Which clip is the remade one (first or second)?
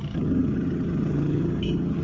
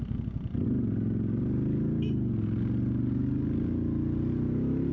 first